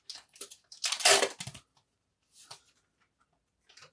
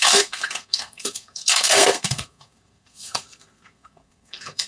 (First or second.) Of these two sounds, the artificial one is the second